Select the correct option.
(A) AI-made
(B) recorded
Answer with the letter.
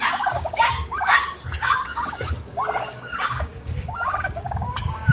A